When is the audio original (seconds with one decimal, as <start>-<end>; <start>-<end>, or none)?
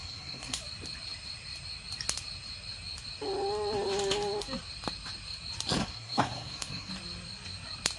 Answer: 0.6-5.8; 6.9-8.0